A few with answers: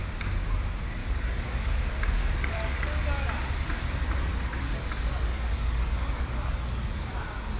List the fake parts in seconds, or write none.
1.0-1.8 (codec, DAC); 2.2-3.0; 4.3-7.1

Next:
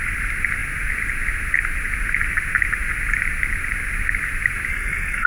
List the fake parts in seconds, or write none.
4.7-5.3 (codec, DAC)

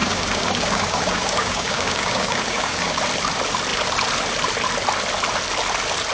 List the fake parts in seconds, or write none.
0.0-3.0 (codec, DAC)

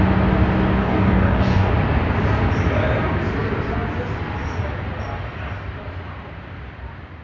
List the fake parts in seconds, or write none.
0.8-1.7 (codec, DAC)